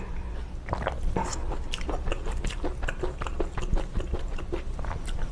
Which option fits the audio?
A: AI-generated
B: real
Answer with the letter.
B